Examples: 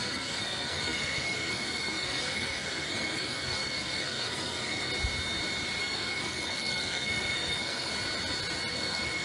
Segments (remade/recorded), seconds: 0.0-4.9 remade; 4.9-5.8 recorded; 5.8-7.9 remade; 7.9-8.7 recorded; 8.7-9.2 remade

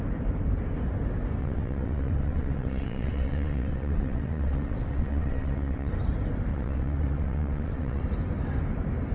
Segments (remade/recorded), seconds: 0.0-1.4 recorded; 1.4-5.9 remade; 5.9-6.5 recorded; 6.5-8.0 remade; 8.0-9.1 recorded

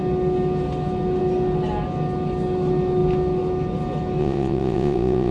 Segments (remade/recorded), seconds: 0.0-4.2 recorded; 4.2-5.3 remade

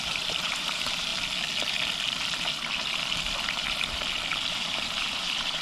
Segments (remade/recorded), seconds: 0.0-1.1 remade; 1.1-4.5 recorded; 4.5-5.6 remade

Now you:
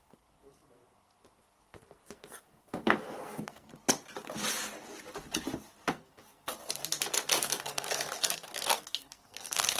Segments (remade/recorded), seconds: 0.0-3.7 remade; 3.7-5.9 recorded; 5.9-6.5 remade; 6.5-7.3 recorded; 7.3-9.8 remade